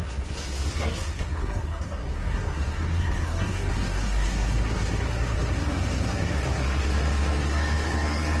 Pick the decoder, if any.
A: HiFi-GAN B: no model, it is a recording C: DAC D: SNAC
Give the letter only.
D